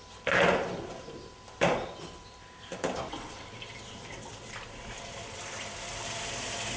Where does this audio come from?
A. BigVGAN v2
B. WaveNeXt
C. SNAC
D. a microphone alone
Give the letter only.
A